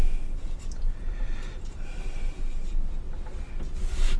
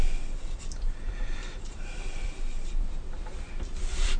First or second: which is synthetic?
second